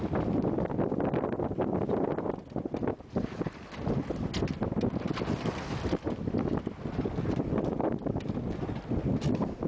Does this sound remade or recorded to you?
recorded